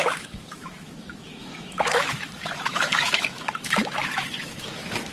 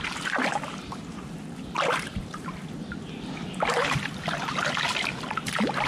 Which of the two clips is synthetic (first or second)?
first